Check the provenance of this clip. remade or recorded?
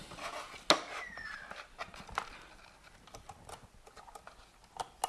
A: recorded